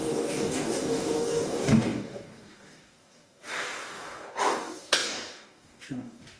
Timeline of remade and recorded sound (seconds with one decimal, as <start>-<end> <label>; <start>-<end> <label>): 0.0-6.4 remade